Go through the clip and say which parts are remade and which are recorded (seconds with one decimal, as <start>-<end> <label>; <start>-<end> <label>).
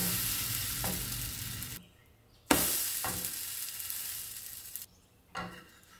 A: 0.0-6.0 recorded